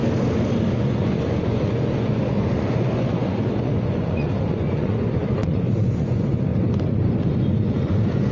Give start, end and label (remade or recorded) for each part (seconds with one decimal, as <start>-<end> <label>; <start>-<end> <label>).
0.0-0.8 recorded; 0.8-6.5 remade; 6.5-7.3 recorded; 7.3-8.3 remade